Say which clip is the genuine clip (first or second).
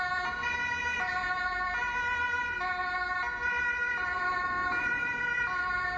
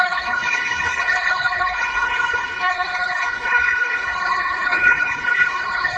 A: first